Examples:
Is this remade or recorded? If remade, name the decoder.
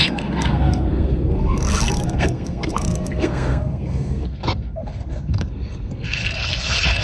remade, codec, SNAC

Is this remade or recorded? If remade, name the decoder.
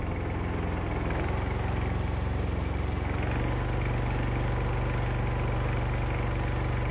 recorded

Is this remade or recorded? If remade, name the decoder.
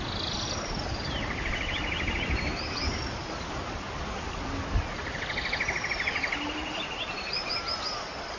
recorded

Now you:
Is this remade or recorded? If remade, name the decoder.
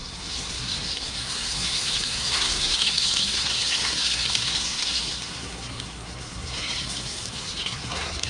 remade, codec, SNAC